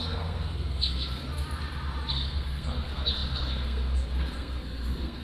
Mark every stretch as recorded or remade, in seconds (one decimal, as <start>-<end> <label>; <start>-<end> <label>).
0.0-1.2 remade; 1.2-2.1 recorded; 2.1-5.2 remade